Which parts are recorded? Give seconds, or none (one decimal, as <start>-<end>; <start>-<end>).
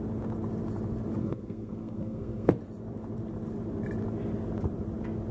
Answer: 0.0-1.2; 2.5-5.3